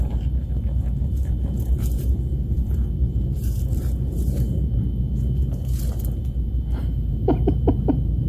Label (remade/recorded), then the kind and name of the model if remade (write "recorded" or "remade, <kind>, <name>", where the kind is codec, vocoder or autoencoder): remade, vocoder, BigVGAN v2